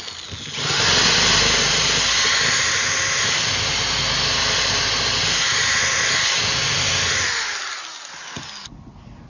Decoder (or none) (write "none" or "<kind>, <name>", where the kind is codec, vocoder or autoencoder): none